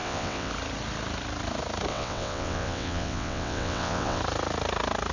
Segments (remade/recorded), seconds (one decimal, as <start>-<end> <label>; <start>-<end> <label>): 0.0-0.5 remade; 0.5-1.9 recorded; 1.9-4.2 remade; 4.2-5.1 recorded

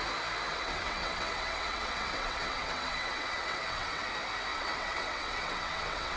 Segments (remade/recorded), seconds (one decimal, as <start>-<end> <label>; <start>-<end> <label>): 0.0-0.5 recorded; 0.5-4.1 remade; 4.1-4.5 recorded; 4.5-6.2 remade

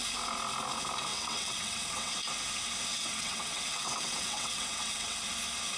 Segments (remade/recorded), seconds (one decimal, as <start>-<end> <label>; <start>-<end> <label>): 0.0-1.1 recorded; 1.1-2.1 remade; 2.1-2.9 recorded; 2.9-5.2 remade; 5.2-5.8 recorded

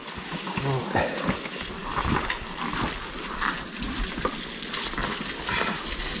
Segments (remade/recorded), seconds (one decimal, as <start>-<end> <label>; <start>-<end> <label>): 0.0-6.2 recorded

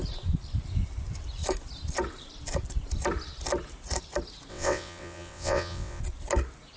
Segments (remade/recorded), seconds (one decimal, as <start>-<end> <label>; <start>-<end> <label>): 0.0-4.5 recorded; 4.5-6.0 remade; 6.0-6.8 recorded